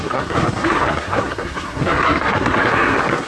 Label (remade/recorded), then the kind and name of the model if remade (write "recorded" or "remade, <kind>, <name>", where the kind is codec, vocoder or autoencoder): remade, codec, SNAC